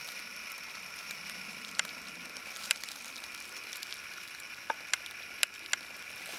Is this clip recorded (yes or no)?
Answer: yes